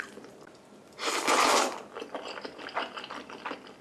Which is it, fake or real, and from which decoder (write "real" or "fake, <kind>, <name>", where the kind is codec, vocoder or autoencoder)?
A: fake, vocoder, BigVGAN v2